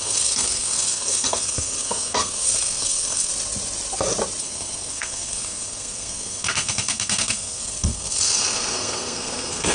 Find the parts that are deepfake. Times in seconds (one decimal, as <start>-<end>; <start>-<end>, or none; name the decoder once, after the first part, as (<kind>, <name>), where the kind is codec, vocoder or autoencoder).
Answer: 0.0-3.3 (codec, SNAC); 4.4-9.7